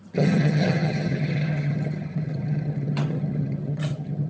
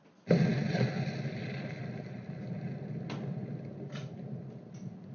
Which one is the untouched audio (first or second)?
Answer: second